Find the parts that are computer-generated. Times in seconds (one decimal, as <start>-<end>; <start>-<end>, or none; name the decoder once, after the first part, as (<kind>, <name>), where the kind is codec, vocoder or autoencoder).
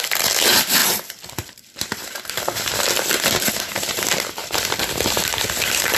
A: 0.0-6.0 (vocoder, BigVGAN v2)